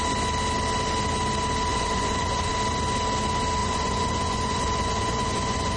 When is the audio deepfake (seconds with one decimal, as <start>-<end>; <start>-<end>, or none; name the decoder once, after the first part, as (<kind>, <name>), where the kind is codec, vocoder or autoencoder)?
1.7-2.5 (vocoder, Vocos); 3.6-5.8